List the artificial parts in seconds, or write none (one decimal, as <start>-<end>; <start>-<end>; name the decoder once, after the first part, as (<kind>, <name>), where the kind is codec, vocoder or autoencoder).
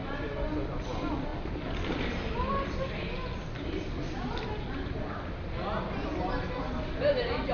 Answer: none